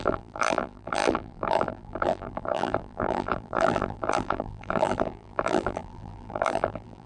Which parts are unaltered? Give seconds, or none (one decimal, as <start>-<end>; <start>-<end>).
none